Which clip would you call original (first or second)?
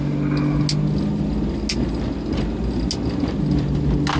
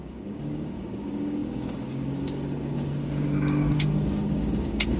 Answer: first